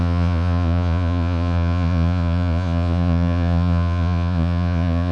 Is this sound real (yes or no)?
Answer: no